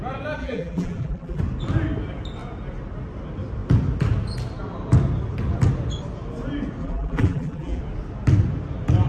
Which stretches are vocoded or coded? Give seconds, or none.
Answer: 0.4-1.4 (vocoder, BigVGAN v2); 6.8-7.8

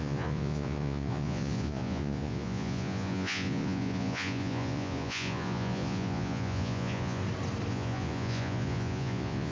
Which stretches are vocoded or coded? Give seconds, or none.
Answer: 0.0-7.2 (vocoder, Vocos); 7.7-9.5